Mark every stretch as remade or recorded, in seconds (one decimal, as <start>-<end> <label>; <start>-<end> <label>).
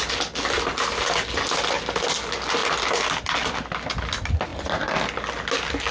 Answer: 0.0-5.9 recorded